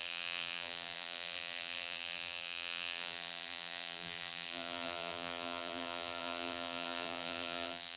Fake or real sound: fake